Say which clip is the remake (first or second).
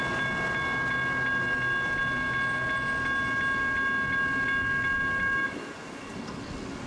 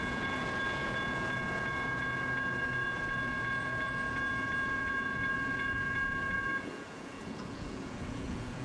second